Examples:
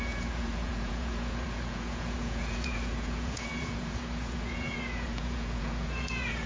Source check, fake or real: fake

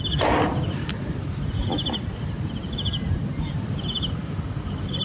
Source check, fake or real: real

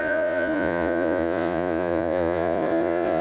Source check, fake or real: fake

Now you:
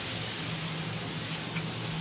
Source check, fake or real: real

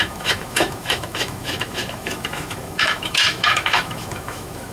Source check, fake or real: fake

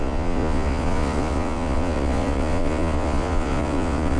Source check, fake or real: fake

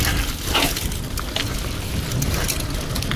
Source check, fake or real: real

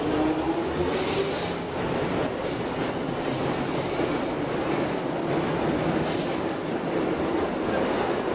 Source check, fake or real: real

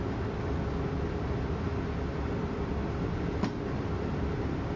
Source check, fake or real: real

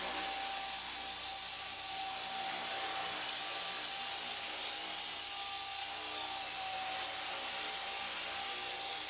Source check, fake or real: real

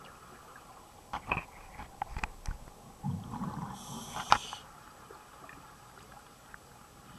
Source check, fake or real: real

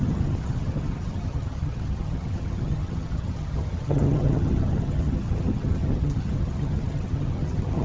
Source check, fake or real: fake